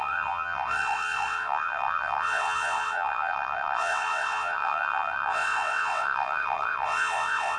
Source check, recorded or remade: remade